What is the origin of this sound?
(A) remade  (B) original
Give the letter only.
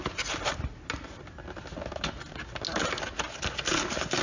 B